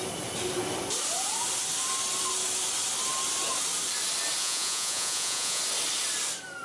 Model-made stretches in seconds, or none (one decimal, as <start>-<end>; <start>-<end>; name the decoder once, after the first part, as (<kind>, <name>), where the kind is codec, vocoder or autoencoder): 4.4-5.6 (vocoder, Vocos)